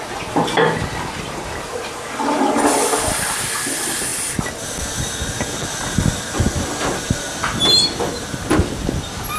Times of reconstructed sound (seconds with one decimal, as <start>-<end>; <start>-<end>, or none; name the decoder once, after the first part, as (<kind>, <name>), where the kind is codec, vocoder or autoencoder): none